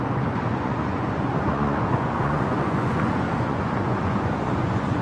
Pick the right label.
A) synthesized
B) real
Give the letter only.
A